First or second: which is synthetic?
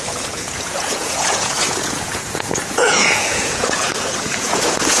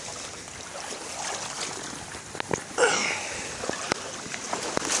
first